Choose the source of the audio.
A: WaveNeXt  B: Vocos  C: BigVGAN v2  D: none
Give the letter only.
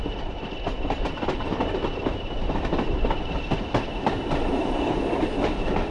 D